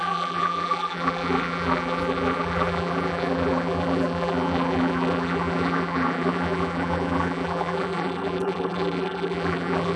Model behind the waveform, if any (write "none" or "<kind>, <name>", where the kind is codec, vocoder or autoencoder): vocoder, BigVGAN v2